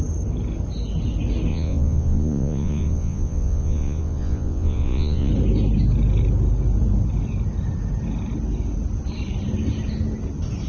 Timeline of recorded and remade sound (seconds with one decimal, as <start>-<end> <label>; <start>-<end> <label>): 0.0-1.5 recorded; 1.5-5.3 remade; 5.3-10.7 recorded